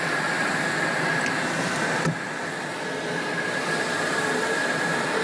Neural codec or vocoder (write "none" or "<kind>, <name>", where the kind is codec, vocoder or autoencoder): none